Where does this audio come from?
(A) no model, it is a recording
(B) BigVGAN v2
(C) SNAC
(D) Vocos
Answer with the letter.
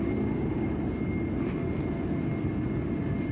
A